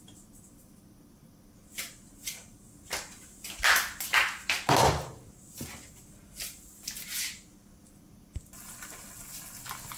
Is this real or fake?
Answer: real